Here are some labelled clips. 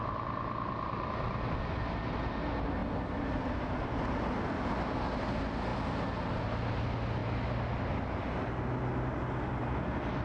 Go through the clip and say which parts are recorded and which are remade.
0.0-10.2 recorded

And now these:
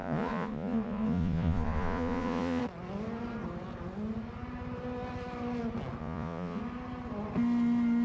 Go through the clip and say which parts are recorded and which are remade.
0.0-2.6 remade; 2.6-6.0 recorded; 6.0-6.6 remade; 6.6-8.0 recorded

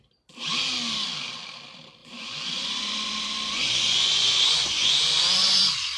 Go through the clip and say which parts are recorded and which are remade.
0.0-2.0 recorded; 2.0-5.6 remade; 5.6-6.0 recorded

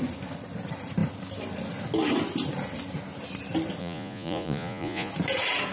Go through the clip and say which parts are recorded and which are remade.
0.0-3.8 recorded; 3.8-5.1 remade; 5.1-5.7 recorded

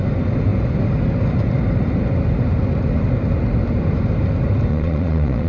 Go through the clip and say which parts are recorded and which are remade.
0.0-4.7 recorded; 4.7-5.5 remade

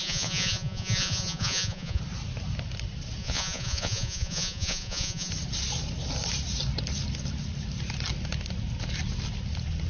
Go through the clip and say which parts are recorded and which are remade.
0.0-2.0 remade; 2.0-3.2 recorded; 3.2-5.3 remade; 5.3-9.9 recorded

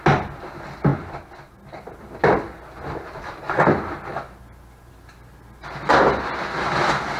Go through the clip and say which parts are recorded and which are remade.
0.0-7.2 recorded